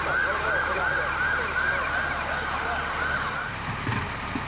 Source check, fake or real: real